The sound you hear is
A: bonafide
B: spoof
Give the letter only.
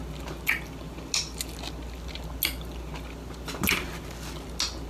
A